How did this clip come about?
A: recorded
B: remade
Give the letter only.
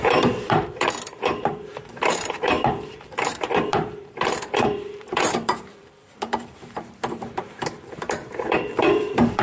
B